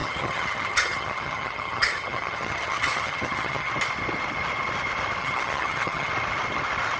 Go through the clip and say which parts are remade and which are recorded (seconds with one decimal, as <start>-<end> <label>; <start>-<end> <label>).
0.0-3.7 remade; 3.7-5.2 recorded; 5.2-6.1 remade; 6.1-7.0 recorded